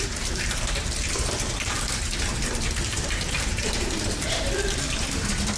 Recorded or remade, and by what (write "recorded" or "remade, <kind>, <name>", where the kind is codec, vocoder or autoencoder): remade, vocoder, BigVGAN v2